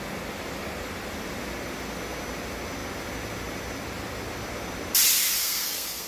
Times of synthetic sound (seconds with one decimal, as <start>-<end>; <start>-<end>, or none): 5.4-6.1